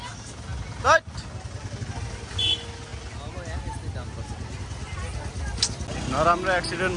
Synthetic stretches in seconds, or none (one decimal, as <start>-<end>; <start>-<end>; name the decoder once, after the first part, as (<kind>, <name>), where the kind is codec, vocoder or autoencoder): none